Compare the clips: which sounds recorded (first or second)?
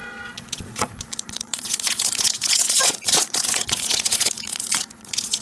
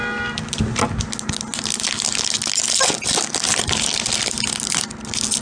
second